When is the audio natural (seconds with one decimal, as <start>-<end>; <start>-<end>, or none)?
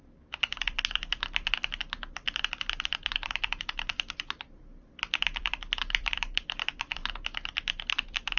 7.0-7.9